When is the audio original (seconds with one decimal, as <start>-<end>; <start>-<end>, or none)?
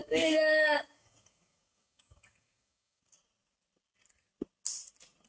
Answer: 3.0-5.3